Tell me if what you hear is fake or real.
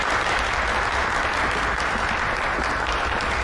real